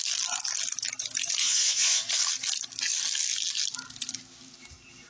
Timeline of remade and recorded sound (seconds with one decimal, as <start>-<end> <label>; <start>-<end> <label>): 0.0-1.4 recorded; 1.4-2.1 remade; 2.1-5.1 recorded